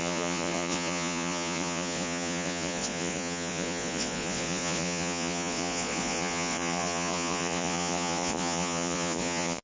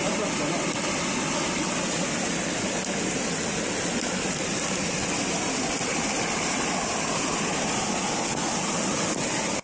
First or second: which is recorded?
second